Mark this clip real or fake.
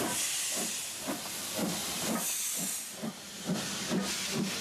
real